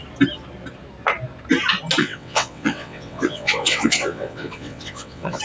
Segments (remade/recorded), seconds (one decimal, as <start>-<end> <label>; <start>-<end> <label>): 0.0-2.0 recorded; 2.0-5.4 remade